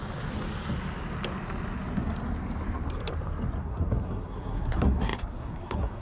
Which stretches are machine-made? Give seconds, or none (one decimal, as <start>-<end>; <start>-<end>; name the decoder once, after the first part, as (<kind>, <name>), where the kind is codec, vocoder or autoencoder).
3.6-6.0 (codec, SNAC)